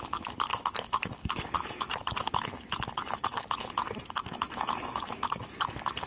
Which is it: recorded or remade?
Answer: remade